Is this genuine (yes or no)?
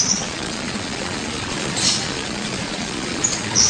no